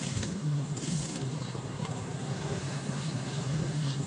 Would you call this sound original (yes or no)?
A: no